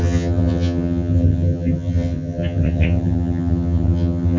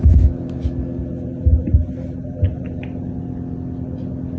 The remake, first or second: first